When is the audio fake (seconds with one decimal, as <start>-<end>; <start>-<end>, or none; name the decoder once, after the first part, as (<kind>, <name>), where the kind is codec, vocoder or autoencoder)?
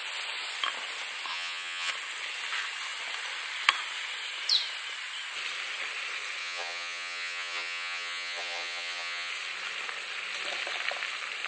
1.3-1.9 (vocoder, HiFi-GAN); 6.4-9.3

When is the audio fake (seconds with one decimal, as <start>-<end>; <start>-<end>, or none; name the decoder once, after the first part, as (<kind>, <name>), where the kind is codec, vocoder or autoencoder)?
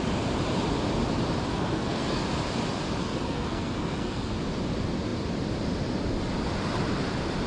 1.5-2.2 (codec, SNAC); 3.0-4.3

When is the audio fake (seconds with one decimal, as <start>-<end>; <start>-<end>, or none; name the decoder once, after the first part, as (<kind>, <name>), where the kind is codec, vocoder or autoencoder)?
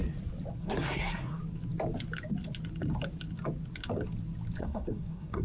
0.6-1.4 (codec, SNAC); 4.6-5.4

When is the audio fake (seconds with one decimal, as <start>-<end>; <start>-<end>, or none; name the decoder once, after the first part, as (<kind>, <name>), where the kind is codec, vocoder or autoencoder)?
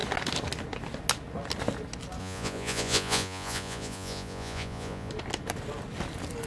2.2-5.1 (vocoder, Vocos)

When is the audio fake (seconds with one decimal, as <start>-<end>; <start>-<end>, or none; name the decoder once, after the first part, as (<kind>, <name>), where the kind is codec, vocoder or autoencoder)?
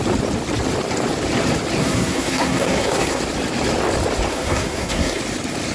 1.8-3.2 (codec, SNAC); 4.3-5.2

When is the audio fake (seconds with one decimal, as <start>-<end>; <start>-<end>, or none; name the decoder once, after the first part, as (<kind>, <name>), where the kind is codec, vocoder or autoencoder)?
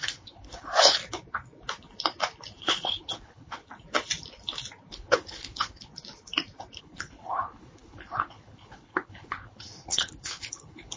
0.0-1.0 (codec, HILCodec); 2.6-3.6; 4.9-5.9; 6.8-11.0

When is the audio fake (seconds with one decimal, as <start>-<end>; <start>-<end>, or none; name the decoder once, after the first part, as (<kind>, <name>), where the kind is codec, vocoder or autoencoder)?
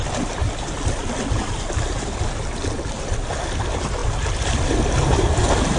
none